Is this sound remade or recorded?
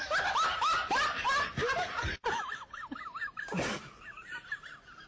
recorded